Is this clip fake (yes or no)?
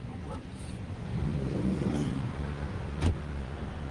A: yes